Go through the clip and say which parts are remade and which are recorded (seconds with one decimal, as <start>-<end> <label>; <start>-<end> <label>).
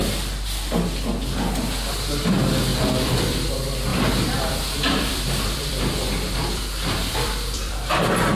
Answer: 0.0-2.7 recorded; 2.7-3.5 remade; 3.5-3.9 recorded; 3.9-8.3 remade